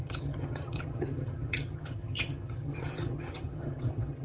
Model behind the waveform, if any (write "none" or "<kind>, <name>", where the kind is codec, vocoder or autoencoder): vocoder, HiFi-GAN